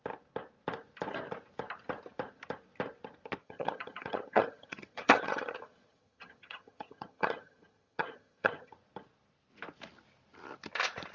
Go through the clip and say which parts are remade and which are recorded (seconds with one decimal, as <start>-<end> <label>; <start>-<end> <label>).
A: 0.0-3.4 recorded; 3.4-8.7 remade; 8.7-11.1 recorded